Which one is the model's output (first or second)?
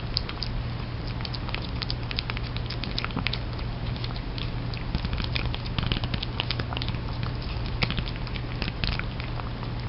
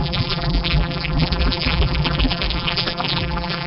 second